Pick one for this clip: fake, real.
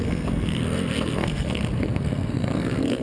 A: fake